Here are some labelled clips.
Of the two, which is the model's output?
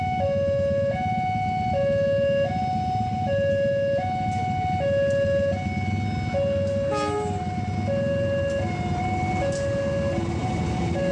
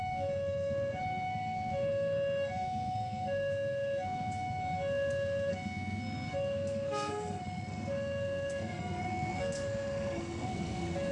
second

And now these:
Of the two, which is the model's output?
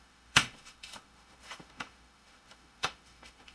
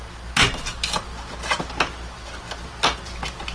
first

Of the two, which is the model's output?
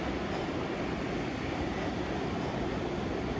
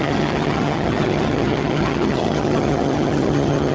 second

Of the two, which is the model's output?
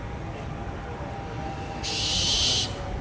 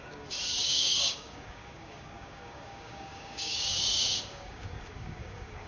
second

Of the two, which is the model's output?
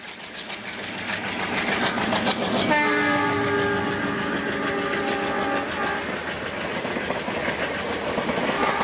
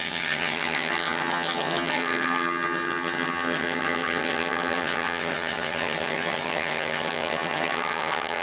second